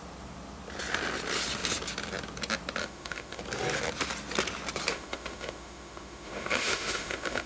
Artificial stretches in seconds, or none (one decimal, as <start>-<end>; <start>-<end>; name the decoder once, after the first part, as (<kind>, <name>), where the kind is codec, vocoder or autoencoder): 2.8-3.4 (autoencoder, DAC-VAE); 4.9-7.5